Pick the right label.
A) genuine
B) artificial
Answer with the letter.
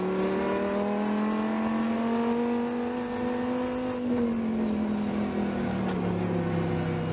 A